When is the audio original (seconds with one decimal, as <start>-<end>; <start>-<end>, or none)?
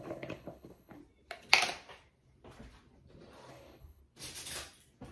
1.0-3.5; 4.0-5.1